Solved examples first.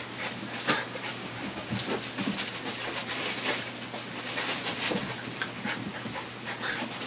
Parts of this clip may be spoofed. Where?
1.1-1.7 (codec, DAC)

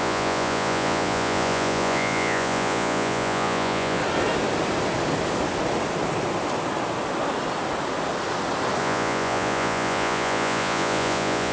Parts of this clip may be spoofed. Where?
0.0-4.0 (vocoder, Vocos); 8.8-11.5

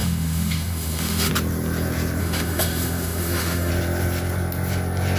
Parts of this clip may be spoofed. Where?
0.0-1.3 (autoencoder, DAC-VAE); 2.2-3.7

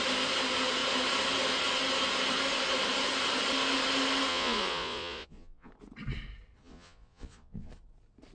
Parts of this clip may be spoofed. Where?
4.3-5.7 (vocoder, Vocos); 6.6-7.7

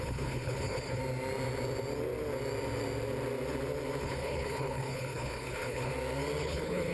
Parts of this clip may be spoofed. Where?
0.0-1.0 (codec, HILCodec); 4.0-5.9; 6.4-6.9

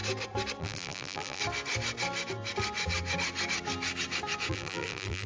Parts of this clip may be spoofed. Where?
0.6-1.4 (vocoder, BigVGAN v2); 4.5-5.3

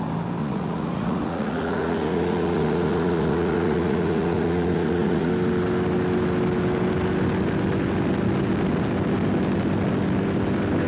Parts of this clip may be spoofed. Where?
0.4-5.3 (vocoder, Vocos)

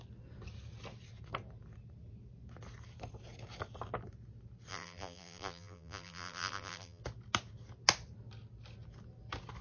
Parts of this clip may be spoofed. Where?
4.7-7.0 (vocoder, BigVGAN v2)